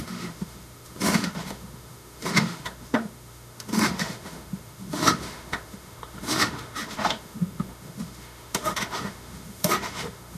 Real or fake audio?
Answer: fake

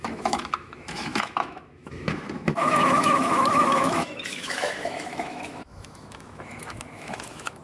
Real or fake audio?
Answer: fake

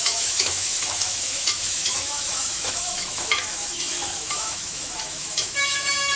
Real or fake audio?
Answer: fake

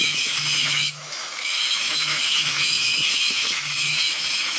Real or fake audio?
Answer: fake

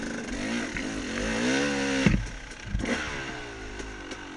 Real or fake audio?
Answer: real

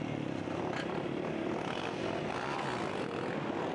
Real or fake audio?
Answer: real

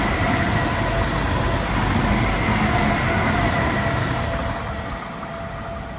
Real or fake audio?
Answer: real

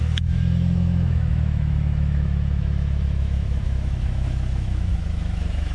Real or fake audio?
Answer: fake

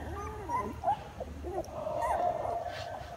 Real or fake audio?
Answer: real